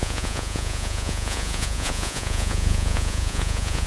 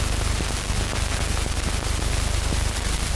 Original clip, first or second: second